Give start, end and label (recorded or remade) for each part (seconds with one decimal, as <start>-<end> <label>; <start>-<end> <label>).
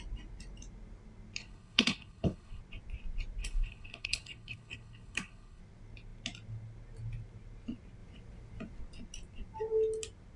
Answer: 0.0-1.4 recorded; 1.4-2.6 remade; 2.6-3.4 recorded; 3.4-5.6 remade; 5.6-10.4 recorded